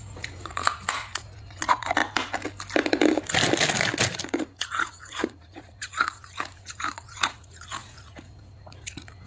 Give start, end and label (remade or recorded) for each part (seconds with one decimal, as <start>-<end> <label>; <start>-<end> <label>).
0.0-2.0 remade; 2.0-4.2 recorded; 4.2-9.3 remade